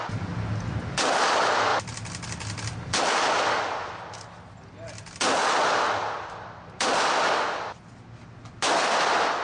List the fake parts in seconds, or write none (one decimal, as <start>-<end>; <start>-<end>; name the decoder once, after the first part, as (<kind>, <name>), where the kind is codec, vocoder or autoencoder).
none